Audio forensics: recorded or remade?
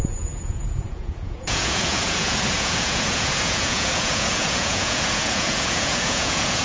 remade